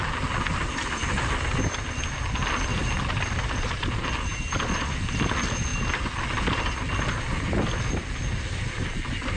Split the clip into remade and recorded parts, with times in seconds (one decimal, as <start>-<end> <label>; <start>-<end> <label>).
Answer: 0.0-9.4 recorded